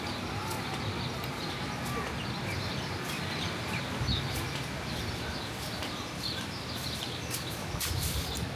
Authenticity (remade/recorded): recorded